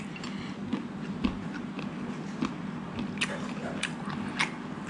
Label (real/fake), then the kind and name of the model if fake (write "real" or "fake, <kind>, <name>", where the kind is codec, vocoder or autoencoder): real